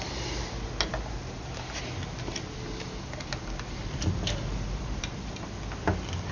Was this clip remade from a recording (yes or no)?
no